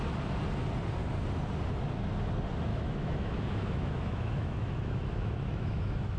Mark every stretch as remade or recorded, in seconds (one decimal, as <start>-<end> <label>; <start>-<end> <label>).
0.0-2.7 recorded; 2.7-6.2 remade